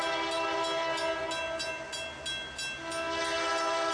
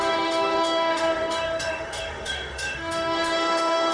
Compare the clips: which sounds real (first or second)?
first